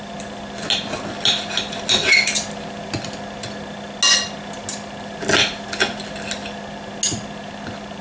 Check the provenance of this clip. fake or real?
real